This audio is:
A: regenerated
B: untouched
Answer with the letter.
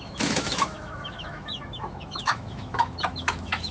A